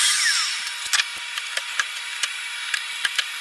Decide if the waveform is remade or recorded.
recorded